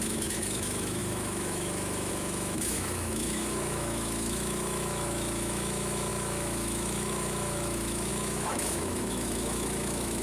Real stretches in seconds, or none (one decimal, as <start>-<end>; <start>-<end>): none